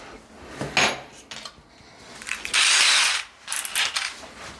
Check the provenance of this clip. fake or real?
real